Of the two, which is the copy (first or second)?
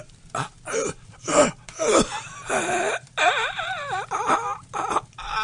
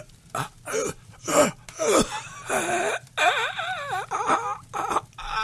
first